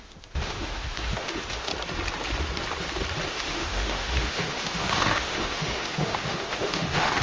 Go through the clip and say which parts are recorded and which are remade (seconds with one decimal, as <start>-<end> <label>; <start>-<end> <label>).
0.0-1.7 remade; 1.7-3.3 recorded; 3.3-7.2 remade